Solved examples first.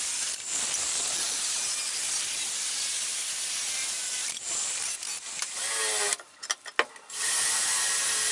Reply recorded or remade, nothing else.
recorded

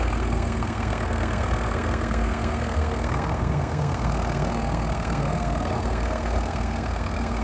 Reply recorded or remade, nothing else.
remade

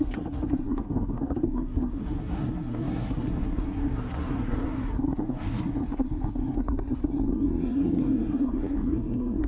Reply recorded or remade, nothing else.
remade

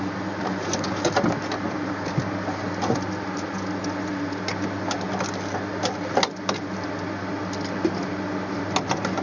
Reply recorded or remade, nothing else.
recorded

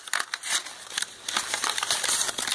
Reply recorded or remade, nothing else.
recorded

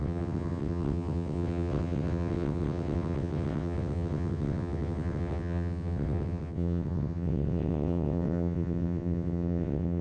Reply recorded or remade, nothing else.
remade